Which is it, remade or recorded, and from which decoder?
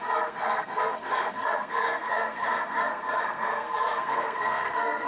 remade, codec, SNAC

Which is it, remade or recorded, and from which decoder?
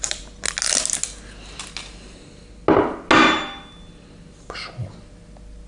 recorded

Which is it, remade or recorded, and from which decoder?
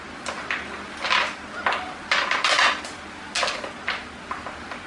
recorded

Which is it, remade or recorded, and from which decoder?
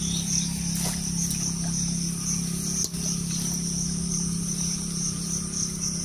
recorded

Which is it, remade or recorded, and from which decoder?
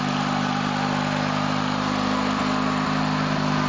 recorded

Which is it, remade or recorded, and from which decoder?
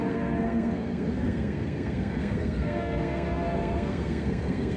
remade, codec, SNAC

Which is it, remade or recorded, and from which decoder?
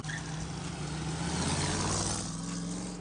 recorded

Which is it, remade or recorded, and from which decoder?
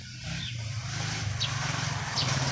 recorded